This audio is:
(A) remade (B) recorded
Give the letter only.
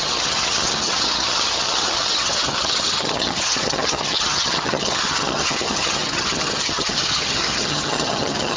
A